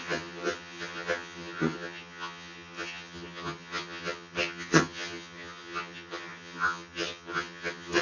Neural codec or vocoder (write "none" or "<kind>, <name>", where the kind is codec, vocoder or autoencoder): vocoder, HiFi-GAN